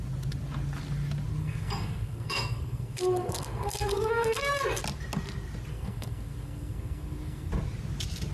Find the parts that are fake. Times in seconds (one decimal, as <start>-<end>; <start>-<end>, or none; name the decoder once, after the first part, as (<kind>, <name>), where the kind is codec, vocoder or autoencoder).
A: 1.4-4.8 (codec, SNAC); 5.7-7.5